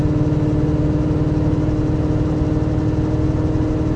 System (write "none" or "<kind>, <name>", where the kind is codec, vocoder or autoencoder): none